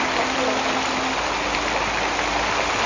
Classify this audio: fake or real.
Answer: real